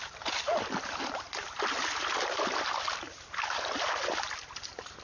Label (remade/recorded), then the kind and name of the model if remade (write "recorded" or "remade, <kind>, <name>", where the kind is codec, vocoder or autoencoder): recorded